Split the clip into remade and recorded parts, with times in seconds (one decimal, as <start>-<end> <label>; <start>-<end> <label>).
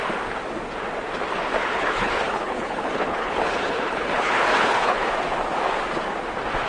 0.0-1.6 recorded; 1.6-5.1 remade; 5.1-6.7 recorded